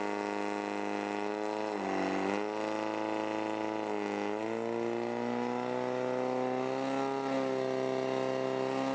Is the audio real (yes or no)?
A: yes